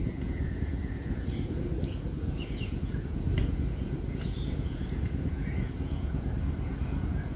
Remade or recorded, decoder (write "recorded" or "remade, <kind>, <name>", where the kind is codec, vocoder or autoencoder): remade, vocoder, Vocos